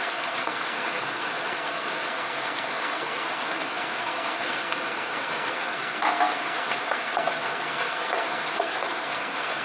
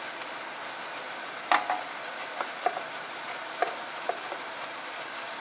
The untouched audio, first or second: second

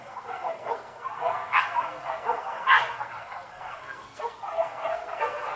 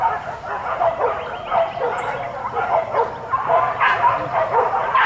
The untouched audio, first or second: second